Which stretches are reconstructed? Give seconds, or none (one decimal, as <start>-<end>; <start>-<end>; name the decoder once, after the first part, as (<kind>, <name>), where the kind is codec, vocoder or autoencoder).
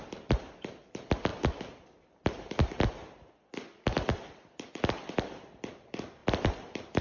0.0-7.0 (vocoder, BigVGAN v2)